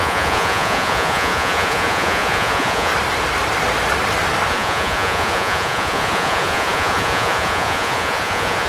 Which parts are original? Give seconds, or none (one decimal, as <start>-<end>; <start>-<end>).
2.9-4.5